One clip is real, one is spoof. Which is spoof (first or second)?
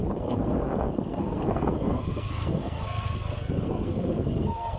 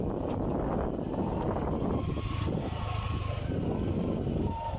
first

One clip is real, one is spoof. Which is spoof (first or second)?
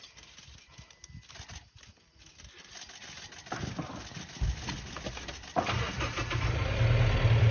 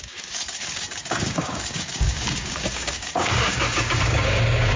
second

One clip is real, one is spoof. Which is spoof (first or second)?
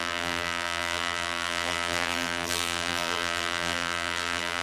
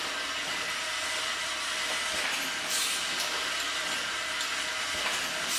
first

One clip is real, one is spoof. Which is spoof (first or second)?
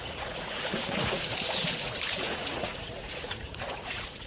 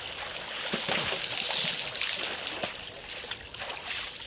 first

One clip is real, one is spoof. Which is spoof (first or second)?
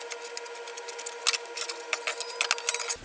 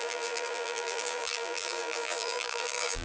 second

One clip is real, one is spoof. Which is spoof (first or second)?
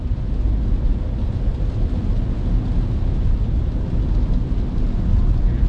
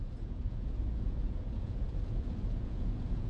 second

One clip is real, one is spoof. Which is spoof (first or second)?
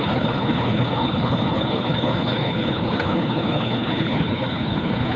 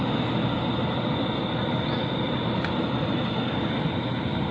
first